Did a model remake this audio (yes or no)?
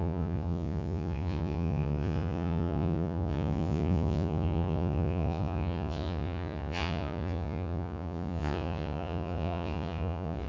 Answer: yes